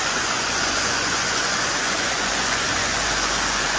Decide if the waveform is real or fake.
fake